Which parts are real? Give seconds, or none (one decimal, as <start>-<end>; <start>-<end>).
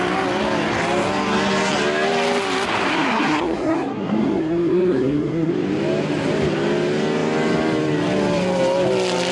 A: 0.0-2.9; 5.5-9.3